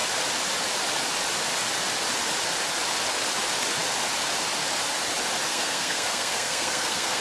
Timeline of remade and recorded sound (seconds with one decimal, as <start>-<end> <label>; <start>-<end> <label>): 0.0-5.5 recorded; 5.5-7.2 remade